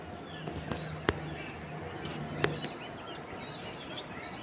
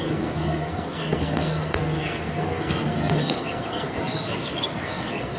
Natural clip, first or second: first